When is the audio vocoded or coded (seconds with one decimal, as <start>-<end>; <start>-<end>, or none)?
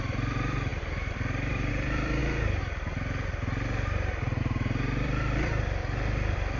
0.0-2.2; 4.4-6.6